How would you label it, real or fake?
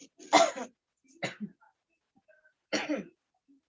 real